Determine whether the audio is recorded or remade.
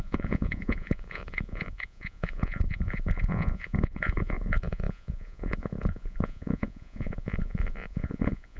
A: remade